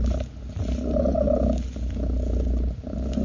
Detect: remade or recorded recorded